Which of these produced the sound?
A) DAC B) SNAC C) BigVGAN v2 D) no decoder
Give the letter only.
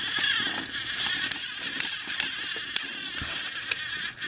D